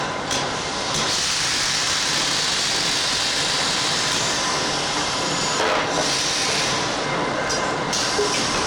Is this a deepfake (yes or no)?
no